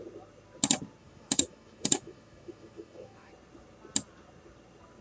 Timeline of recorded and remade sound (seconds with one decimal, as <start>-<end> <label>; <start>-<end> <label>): 0.0-1.0 recorded; 1.0-3.3 remade; 3.3-5.0 recorded